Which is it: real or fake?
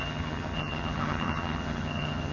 fake